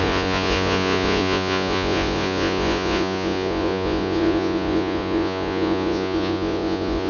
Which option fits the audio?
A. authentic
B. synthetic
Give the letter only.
B